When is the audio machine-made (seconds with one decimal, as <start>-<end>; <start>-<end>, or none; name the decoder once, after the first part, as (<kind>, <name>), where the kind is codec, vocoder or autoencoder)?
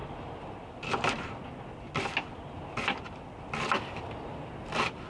none